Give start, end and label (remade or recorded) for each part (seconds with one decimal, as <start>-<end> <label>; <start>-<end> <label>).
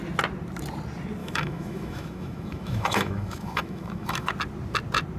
0.0-1.2 recorded; 1.2-4.3 remade; 4.3-5.2 recorded